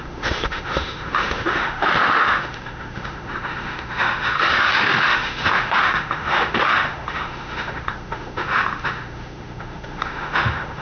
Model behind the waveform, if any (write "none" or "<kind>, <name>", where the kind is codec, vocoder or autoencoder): autoencoder, DAC-VAE